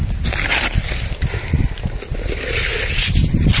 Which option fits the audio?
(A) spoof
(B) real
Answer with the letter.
B